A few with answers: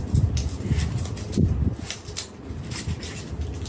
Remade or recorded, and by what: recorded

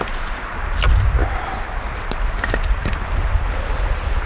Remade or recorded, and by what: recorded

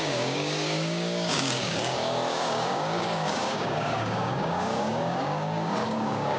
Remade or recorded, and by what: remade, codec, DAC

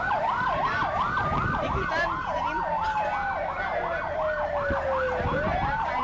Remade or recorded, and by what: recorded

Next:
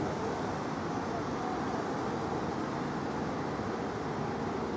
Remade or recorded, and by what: recorded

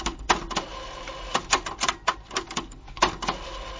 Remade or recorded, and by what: recorded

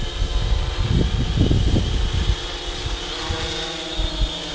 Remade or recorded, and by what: recorded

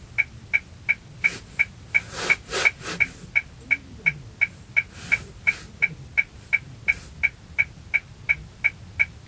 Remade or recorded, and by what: recorded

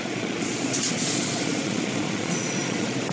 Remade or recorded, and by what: remade, vocoder, Vocos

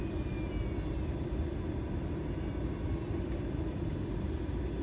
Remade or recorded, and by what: recorded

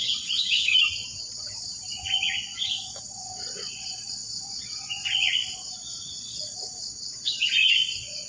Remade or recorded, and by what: remade, vocoder, Vocos